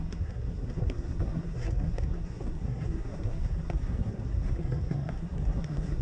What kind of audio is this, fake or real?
fake